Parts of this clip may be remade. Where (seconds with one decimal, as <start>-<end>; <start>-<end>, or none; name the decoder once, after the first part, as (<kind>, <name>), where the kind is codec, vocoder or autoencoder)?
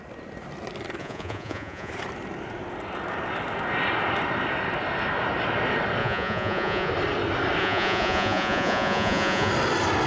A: 1.0-1.9 (vocoder, Vocos); 6.0-6.9; 7.6-9.5